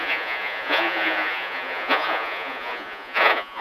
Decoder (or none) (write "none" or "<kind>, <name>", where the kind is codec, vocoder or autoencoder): vocoder, Vocos